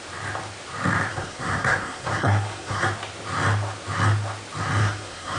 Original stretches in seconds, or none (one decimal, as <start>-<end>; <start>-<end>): 0.0-1.1; 2.8-4.8